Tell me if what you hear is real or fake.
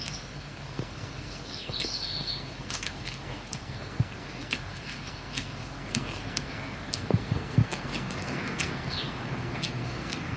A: fake